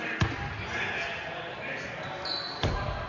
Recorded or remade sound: recorded